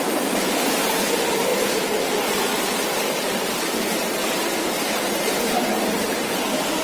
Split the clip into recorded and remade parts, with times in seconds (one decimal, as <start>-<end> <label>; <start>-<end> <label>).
0.0-1.5 remade; 1.5-5.3 recorded; 5.3-6.8 remade